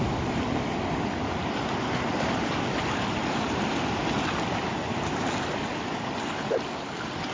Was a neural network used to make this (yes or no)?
no